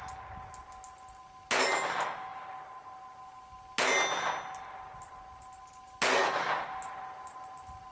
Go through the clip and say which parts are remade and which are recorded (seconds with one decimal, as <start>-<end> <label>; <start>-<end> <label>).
0.0-7.9 recorded